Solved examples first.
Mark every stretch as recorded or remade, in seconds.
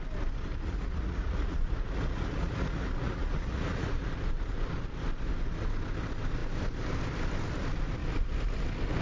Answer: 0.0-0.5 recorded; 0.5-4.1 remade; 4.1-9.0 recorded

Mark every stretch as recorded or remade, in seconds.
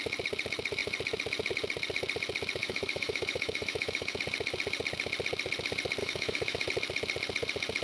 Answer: 0.0-2.6 recorded; 2.6-4.2 remade; 4.2-6.0 recorded; 6.0-6.7 remade; 6.7-7.8 recorded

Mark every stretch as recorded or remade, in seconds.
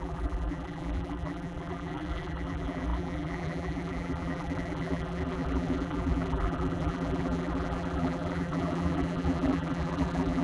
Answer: 0.0-10.4 remade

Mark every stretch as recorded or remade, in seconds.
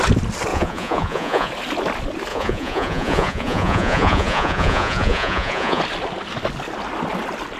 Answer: 0.0-0.5 recorded; 0.5-1.5 remade; 1.5-2.3 recorded; 2.3-5.8 remade; 5.8-7.6 recorded